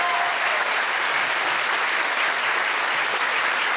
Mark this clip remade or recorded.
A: recorded